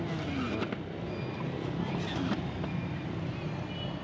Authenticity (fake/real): real